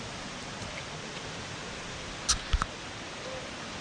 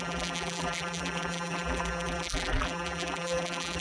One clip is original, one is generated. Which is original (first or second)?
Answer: first